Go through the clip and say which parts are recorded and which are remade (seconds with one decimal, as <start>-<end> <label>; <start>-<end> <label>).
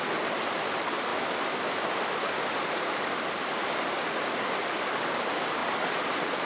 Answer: 0.0-1.1 remade; 1.1-5.0 recorded; 5.0-6.5 remade